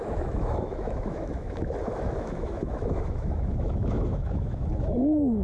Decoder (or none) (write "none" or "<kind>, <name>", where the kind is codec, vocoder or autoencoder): autoencoder, DAC-VAE